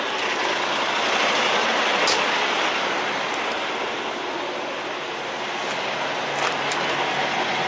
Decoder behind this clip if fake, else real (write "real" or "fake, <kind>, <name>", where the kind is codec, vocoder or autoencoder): real